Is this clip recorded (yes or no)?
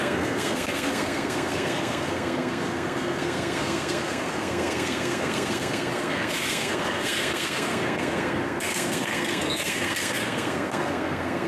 no